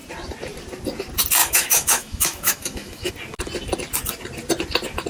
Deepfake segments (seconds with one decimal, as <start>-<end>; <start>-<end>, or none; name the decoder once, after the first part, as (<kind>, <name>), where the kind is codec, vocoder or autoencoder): 1.4-3.1 (autoencoder, DAC-VAE)